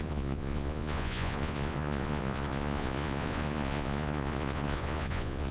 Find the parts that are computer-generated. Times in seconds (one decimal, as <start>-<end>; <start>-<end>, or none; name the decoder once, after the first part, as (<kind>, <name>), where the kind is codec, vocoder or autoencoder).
0.0-5.5 (vocoder, Vocos)